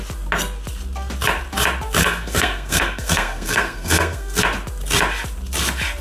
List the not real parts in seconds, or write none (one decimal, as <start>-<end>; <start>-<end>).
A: 2.0-4.4